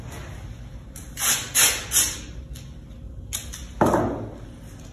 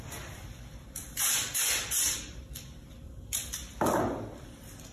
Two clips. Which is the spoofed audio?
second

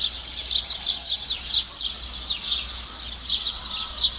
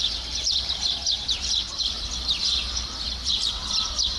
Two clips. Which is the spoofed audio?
second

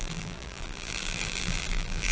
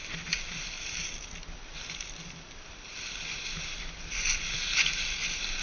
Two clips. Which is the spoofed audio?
first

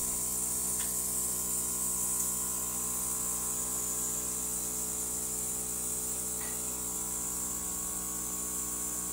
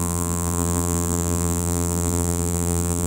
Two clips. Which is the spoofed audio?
second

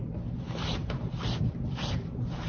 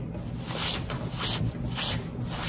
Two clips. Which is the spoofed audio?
first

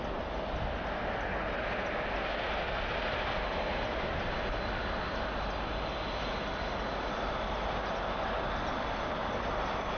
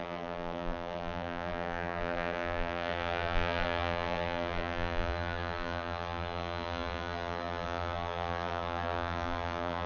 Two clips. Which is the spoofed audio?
second